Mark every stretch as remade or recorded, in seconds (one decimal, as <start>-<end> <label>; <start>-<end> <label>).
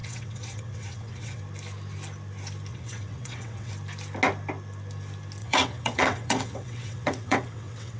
0.0-1.4 remade; 1.4-2.7 recorded; 2.7-3.7 remade; 3.7-5.4 recorded; 5.4-8.0 remade